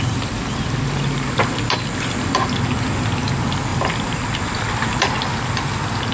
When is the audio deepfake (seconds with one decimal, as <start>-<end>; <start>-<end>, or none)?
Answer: 3.7-4.7